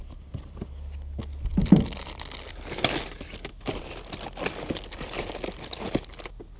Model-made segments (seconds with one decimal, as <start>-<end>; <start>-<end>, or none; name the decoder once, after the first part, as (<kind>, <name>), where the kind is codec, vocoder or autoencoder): none

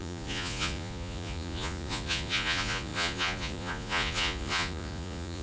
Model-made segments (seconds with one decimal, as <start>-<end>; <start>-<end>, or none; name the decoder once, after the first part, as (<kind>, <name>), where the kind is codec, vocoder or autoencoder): 0.0-5.4 (vocoder, Vocos)

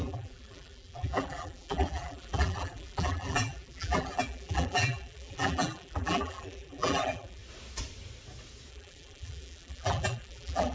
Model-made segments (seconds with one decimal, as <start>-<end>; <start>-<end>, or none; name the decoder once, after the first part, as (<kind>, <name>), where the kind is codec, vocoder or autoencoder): 0.0-7.4 (vocoder, BigVGAN v2); 8.7-10.7

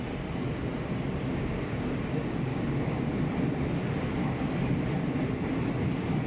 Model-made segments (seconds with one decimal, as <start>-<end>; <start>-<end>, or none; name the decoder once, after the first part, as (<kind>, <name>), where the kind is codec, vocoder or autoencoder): 1.3-1.9 (codec, DAC); 2.5-3.3

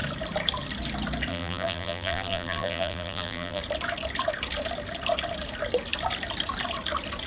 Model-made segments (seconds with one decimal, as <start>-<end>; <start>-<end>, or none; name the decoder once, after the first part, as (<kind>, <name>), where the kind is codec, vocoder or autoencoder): 1.3-3.6 (vocoder, BigVGAN v2)

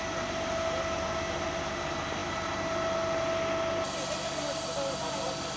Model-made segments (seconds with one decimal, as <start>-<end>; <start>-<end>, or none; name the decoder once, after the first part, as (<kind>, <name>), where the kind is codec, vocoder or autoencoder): none

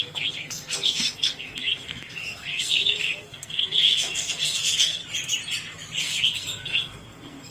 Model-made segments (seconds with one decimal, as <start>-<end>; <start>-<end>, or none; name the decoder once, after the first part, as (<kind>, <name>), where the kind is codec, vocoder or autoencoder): 0.0-5.0 (codec, SNAC); 6.0-7.5